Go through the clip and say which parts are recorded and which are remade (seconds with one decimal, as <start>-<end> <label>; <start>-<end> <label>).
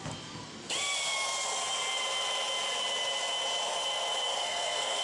0.0-4.3 recorded; 4.3-5.0 remade